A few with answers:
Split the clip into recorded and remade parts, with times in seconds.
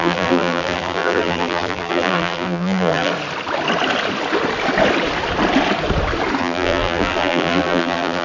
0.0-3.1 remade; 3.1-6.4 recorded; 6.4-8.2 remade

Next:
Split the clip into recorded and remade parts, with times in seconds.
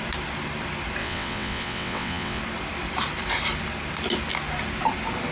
0.0-1.0 recorded; 1.0-2.4 remade; 2.4-5.3 recorded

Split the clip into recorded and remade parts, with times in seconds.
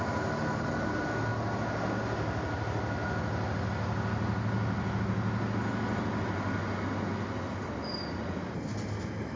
0.0-9.4 recorded